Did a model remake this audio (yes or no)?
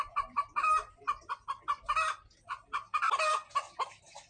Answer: no